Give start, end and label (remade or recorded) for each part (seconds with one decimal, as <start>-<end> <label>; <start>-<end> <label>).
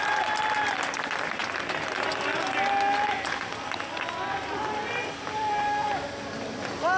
0.0-7.0 recorded